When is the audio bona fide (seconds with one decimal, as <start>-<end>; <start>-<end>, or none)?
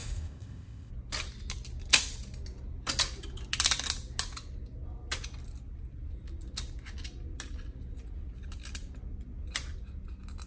0.9-10.5